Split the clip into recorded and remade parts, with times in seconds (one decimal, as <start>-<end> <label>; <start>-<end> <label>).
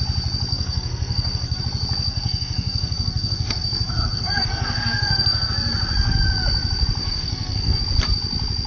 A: 0.0-0.5 recorded; 0.5-1.6 remade; 1.6-2.1 recorded; 2.1-5.5 remade; 5.5-7.0 recorded; 7.0-7.8 remade; 7.8-8.7 recorded